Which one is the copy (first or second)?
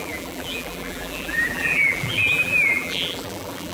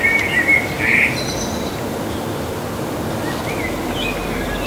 first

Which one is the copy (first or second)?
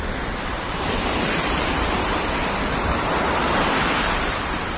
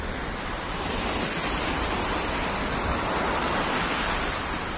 first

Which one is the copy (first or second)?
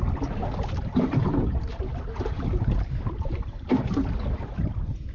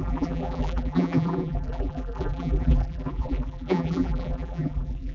second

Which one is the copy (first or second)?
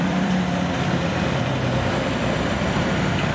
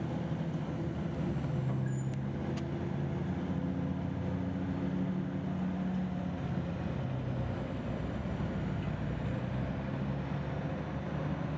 first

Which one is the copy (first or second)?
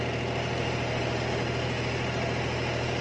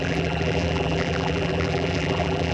second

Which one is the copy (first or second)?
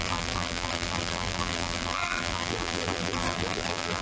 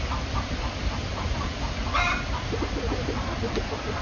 first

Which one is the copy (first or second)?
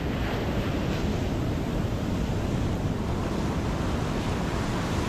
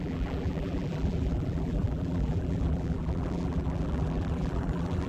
second